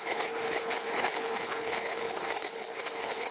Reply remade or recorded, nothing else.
remade